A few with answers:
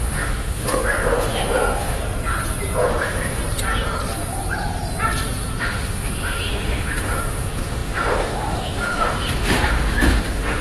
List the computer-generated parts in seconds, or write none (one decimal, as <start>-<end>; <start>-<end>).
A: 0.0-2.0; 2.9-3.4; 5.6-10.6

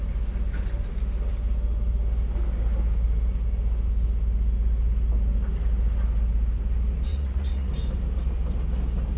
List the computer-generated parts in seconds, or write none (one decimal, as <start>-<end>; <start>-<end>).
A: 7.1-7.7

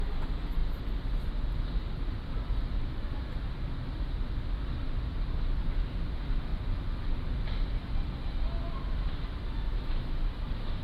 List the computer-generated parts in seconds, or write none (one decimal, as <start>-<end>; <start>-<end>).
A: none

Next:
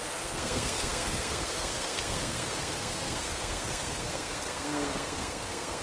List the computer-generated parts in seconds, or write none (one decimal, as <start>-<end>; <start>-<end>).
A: 0.0-5.8